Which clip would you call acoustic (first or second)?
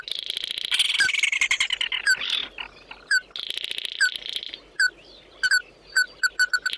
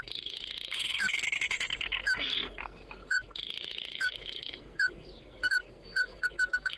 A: first